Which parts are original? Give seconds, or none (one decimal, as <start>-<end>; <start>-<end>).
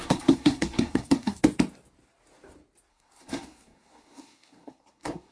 1.4-2.9